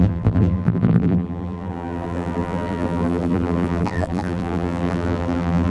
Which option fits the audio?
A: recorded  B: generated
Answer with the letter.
B